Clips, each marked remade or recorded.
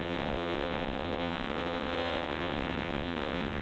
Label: remade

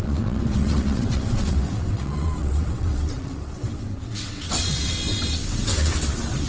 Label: remade